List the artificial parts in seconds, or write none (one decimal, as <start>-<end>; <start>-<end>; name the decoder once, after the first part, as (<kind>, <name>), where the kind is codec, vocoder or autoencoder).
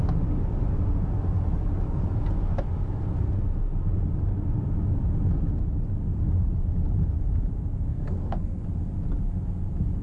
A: 7.9-8.6 (codec, SNAC)